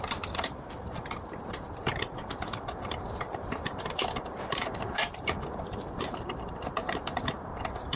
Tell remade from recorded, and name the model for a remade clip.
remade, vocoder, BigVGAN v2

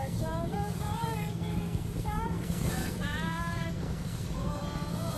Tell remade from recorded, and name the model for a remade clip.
remade, codec, SNAC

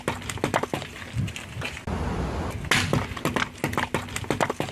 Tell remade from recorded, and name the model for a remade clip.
recorded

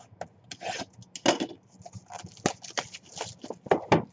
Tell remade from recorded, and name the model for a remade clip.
recorded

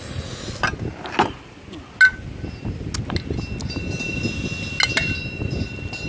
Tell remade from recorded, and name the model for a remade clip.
recorded